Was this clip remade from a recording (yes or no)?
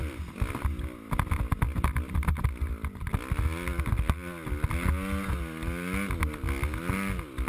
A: no